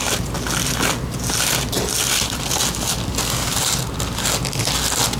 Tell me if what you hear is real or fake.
real